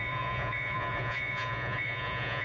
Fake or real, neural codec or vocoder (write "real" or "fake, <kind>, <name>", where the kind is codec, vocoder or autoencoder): fake, vocoder, Vocos